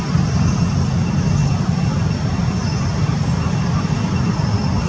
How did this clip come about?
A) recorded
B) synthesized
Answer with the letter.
A